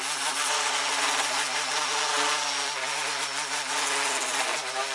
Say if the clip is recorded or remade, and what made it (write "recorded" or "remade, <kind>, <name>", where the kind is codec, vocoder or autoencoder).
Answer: recorded